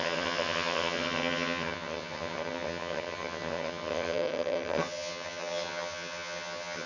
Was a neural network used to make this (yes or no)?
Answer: yes